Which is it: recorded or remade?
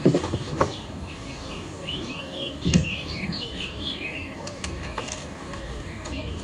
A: remade